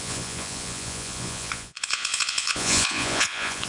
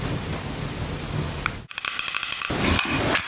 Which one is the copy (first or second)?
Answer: first